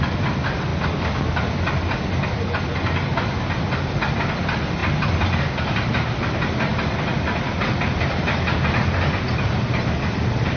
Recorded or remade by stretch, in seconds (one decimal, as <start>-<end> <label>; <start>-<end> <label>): 0.0-10.6 recorded